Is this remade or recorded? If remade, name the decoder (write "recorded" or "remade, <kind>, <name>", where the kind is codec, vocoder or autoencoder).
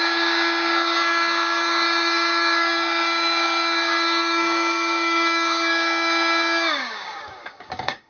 remade, codec, DAC